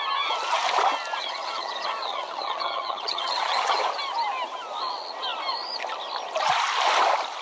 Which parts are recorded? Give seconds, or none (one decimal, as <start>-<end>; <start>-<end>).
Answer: 0.0-1.2; 3.9-7.4